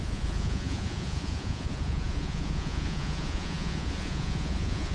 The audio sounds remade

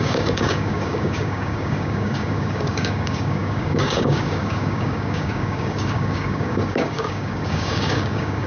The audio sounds remade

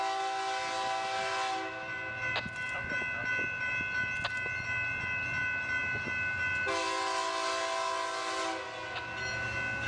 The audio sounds recorded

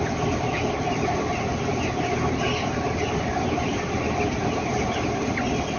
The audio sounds remade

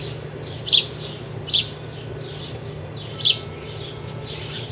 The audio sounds recorded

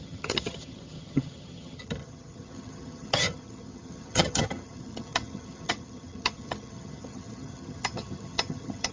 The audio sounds remade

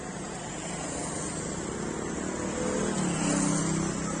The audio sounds recorded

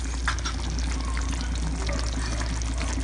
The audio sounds recorded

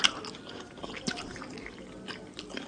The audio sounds recorded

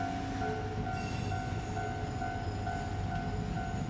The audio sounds recorded